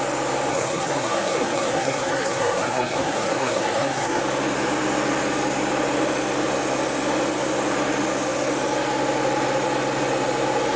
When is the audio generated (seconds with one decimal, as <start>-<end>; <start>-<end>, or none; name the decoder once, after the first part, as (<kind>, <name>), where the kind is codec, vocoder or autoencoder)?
0.5-4.2 (codec, SNAC)